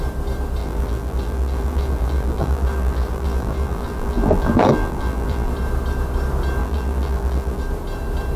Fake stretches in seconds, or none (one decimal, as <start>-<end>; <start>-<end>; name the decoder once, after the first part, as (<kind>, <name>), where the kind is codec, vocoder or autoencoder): 0.6-5.5 (vocoder, BigVGAN v2); 6.6-7.6